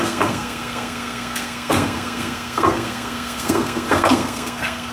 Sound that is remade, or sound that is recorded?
remade